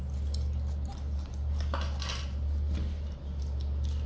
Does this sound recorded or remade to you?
recorded